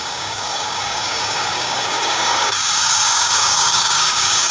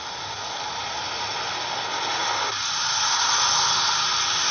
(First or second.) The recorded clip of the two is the second